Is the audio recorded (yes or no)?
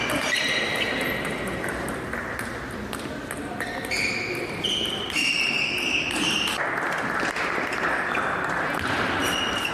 yes